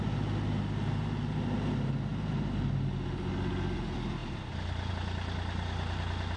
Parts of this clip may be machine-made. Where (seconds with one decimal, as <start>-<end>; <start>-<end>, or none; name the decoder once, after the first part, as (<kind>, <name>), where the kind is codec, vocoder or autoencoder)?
none